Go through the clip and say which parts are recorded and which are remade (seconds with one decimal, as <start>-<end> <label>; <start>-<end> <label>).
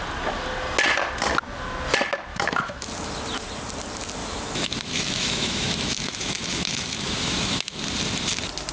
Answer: 0.0-2.3 recorded; 2.3-2.9 remade; 2.9-4.2 recorded; 4.2-7.8 remade; 7.8-8.7 recorded